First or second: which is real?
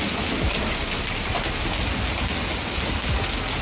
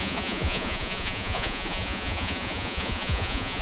first